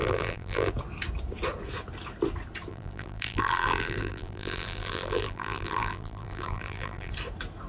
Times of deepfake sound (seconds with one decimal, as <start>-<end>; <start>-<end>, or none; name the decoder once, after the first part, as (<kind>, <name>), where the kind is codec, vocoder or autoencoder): 0.0-0.7 (vocoder, BigVGAN v2); 2.7-7.1